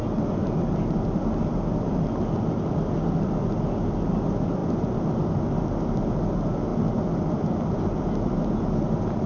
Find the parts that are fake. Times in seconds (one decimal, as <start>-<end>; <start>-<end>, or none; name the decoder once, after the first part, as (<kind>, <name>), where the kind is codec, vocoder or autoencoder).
none